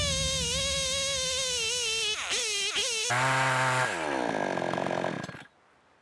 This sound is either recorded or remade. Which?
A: recorded